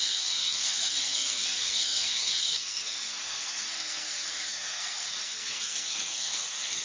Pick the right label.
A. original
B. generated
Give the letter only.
B